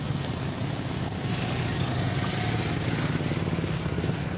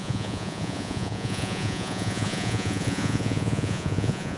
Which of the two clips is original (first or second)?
first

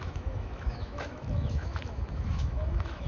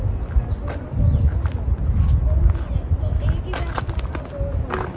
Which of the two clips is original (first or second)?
second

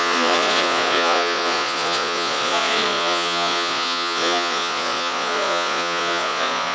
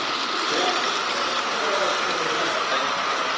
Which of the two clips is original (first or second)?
second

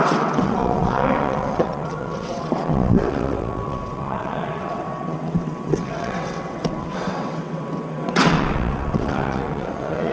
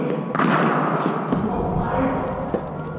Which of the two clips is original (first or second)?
second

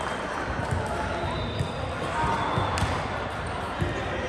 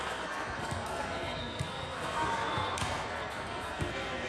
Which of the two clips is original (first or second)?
first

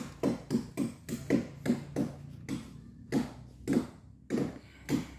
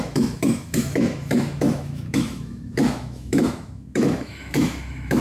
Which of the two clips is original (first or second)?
first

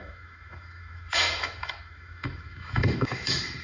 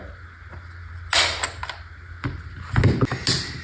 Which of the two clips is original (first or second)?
second